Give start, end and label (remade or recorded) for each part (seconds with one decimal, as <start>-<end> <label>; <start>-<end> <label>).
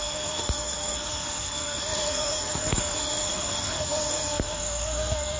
0.0-5.4 remade